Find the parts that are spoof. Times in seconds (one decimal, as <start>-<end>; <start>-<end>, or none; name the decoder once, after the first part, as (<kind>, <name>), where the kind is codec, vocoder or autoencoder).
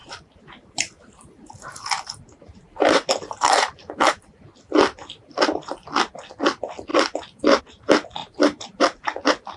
0.0-4.1 (vocoder, BigVGAN v2); 8.2-8.8